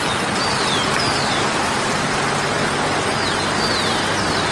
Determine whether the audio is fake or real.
real